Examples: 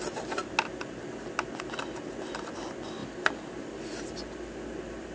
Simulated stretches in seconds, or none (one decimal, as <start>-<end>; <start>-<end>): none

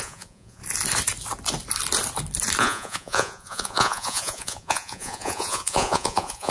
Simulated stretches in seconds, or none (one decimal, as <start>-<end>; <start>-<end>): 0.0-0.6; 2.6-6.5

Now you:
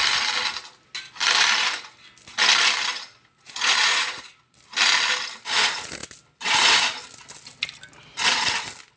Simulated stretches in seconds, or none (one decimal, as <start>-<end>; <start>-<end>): 2.9-4.4

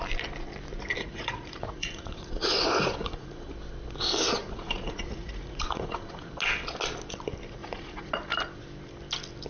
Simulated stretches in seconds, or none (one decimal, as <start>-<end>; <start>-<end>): 1.0-3.5; 4.4-6.3; 7.6-8.1